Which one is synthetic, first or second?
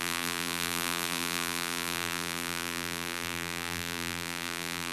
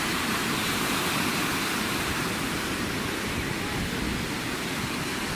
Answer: first